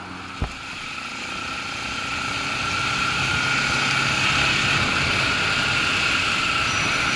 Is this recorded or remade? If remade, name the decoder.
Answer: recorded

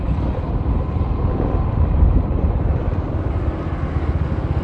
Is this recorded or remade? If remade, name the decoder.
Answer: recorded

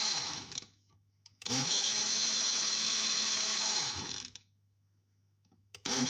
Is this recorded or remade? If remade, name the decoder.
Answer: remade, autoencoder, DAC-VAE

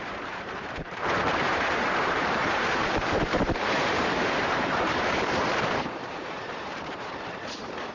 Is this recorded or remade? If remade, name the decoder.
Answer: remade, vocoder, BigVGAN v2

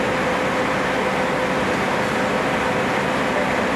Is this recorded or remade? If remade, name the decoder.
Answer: recorded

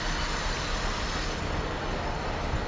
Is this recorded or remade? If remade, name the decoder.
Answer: recorded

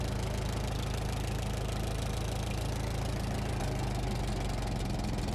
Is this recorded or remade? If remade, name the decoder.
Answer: recorded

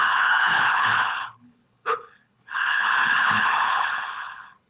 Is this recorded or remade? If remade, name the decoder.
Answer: remade, codec, HILCodec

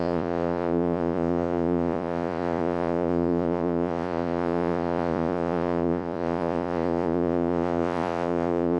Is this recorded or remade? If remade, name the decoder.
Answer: remade, vocoder, Vocos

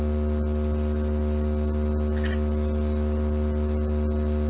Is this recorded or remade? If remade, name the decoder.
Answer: recorded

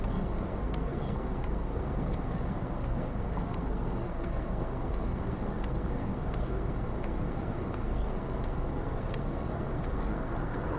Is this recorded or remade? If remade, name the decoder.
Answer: remade, codec, SNAC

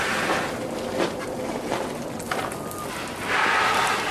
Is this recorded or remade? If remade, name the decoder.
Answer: recorded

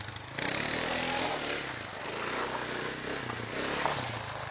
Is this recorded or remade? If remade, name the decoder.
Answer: recorded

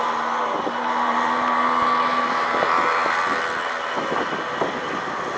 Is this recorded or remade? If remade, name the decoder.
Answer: recorded